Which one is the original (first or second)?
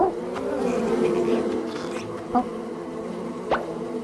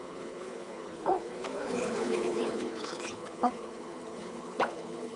first